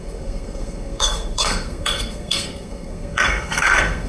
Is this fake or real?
fake